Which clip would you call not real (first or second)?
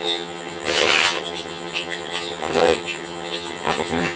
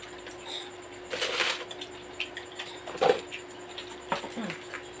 first